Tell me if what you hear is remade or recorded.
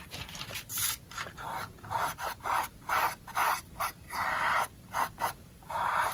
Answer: remade